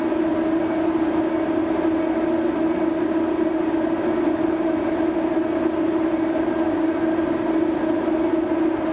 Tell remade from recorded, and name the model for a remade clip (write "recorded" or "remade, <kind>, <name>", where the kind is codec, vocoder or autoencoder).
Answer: recorded